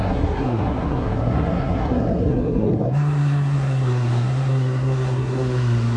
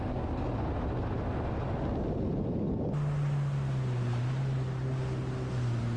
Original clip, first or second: second